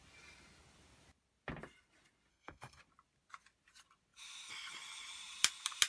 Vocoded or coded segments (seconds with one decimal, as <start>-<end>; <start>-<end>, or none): 2.3-2.8